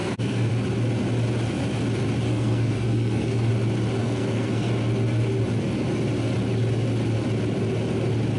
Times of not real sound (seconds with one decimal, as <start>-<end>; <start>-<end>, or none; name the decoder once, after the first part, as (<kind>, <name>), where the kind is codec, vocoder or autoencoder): 0.0-0.5 (codec, SNAC); 2.3-3.5; 4.0-4.7

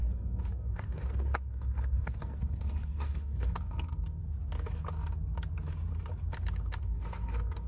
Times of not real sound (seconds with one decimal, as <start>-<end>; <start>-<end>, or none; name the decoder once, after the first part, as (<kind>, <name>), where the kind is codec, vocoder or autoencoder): 0.0-4.2 (codec, SNAC); 6.8-7.7

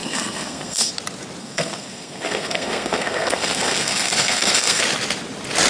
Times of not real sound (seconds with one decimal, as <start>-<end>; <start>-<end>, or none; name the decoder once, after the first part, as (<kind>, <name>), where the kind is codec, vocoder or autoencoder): 0.0-0.9 (codec, SNAC); 1.4-4.8

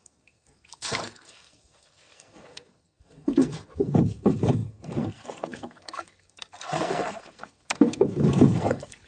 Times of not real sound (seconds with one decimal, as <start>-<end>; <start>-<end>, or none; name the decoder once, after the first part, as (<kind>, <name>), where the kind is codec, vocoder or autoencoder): 0.0-9.1 (codec, SNAC)